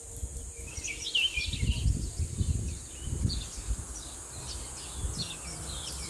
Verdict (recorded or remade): recorded